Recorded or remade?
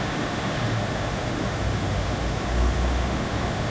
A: remade